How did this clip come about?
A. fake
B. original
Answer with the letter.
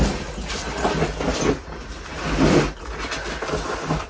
B